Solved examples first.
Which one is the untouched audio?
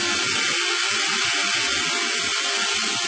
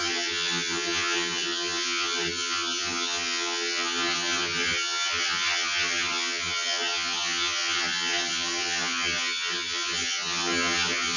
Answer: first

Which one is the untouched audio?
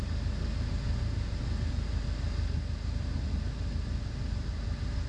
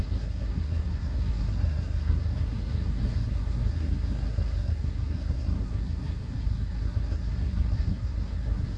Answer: first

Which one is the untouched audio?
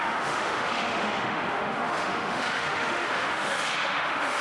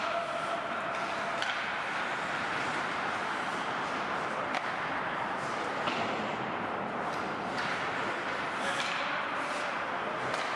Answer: second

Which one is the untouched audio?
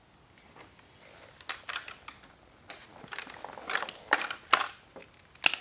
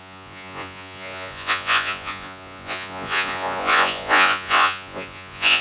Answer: first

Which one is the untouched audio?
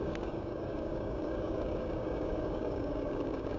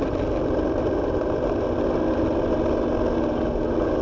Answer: second